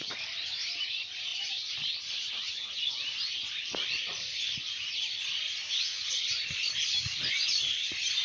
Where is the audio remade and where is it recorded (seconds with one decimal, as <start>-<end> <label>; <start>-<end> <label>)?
0.0-1.3 recorded; 1.3-2.3 remade; 2.3-8.2 recorded